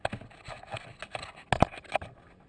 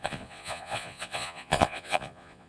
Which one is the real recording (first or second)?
first